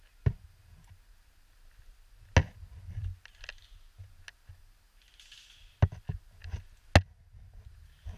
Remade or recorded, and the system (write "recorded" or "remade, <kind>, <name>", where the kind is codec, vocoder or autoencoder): recorded